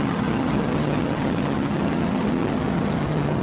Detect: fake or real fake